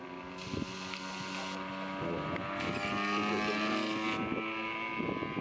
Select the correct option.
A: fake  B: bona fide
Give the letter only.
B